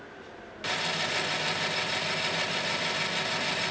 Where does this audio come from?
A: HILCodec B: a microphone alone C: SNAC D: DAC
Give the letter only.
B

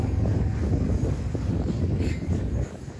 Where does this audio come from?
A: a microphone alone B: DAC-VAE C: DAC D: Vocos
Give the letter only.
C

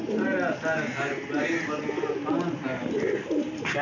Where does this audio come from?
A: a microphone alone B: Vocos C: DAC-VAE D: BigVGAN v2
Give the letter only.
A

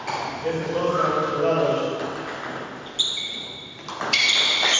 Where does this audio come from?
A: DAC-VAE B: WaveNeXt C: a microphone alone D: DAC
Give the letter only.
C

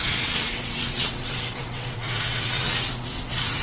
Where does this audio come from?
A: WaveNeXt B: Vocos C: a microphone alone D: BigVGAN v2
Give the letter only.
A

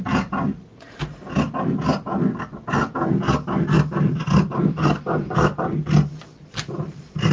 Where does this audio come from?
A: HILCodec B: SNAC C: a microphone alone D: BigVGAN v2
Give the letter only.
C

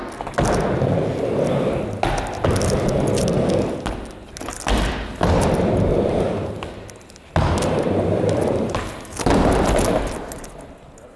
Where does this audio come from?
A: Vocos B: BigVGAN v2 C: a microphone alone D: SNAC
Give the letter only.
C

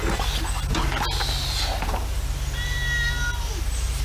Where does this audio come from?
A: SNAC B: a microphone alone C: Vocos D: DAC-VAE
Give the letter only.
B